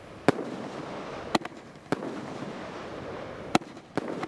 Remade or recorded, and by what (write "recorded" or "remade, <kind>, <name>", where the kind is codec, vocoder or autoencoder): recorded